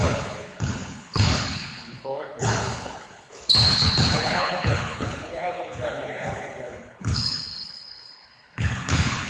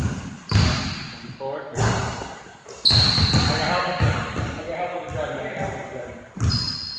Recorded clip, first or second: second